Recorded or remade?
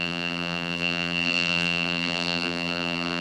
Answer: remade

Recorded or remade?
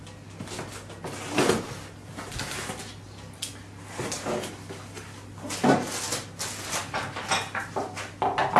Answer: recorded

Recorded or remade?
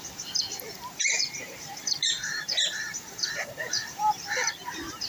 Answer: remade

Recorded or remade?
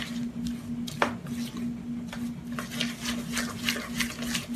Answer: recorded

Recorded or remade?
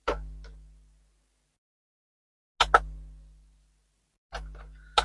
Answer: recorded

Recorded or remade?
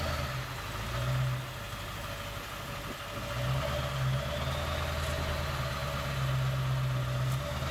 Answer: recorded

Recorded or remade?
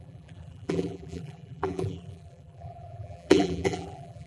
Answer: remade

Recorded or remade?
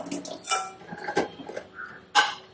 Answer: recorded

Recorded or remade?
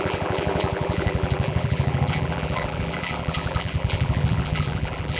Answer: remade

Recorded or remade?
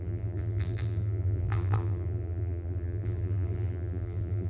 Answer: remade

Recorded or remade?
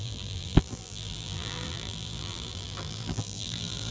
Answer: remade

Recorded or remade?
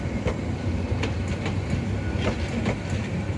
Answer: recorded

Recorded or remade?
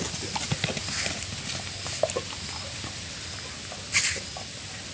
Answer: recorded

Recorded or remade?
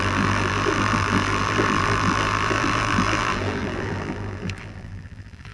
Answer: remade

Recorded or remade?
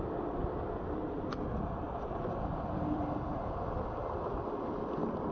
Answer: remade